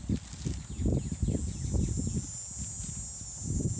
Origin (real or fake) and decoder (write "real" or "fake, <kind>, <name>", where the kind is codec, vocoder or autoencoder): real